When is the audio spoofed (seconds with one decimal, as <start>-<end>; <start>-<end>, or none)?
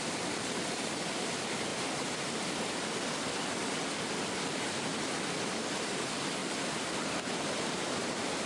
0.0-8.5